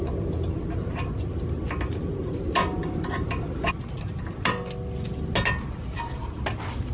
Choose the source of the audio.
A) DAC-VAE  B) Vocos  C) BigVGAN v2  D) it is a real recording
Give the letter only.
D